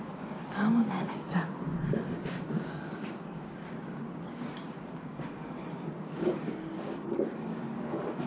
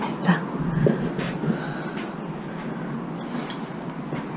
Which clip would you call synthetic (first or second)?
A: first